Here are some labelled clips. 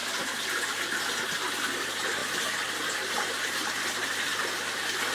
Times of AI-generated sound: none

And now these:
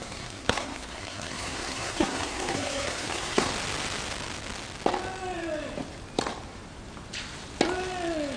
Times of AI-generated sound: 0.0-3.5 (codec, SNAC)

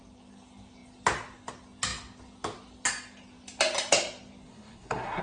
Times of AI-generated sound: 4.5-5.2 (codec, SNAC)

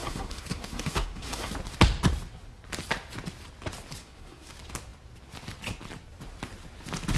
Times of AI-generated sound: 0.0-1.5 (codec, SNAC); 4.0-4.5

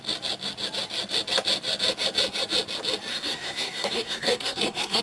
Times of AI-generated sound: 3.1-5.0 (codec, SNAC)

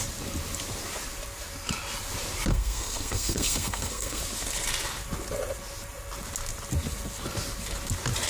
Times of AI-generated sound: 2.5-4.2 (codec, SNAC)

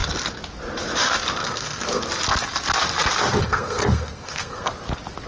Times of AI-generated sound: 1.4-2.0 (codec, SNAC); 3.4-4.7

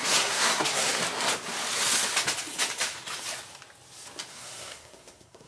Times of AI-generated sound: 0.0-1.0 (codec, SNAC); 4.3-5.5